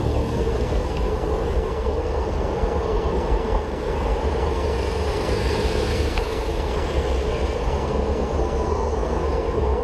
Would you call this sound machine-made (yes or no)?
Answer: yes